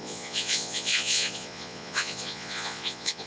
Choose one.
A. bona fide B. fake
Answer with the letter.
B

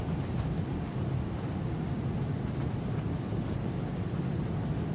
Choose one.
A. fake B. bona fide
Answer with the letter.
B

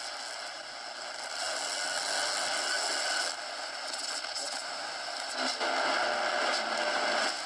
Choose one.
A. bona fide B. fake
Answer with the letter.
A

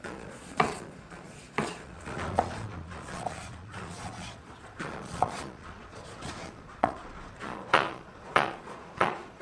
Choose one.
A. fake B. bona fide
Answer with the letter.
A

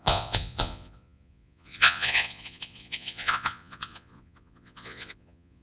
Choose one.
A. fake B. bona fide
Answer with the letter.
A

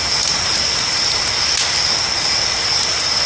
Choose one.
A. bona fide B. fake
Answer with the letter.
A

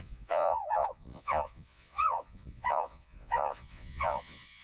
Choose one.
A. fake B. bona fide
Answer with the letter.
A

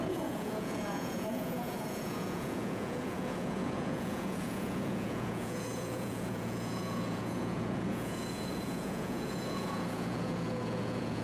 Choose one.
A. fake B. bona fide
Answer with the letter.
A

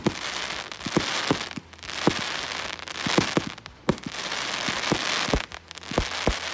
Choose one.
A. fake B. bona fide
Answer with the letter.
B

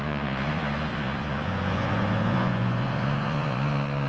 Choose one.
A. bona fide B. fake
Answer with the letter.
B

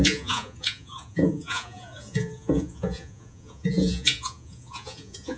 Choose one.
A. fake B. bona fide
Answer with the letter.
A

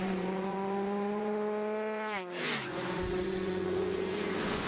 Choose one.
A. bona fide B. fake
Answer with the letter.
B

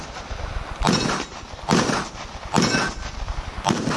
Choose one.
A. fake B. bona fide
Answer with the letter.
B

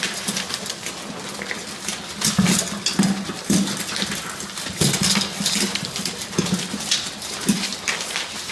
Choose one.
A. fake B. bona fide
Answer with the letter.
B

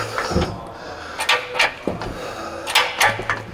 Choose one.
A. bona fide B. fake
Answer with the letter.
A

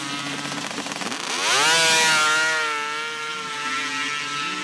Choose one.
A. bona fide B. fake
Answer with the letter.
A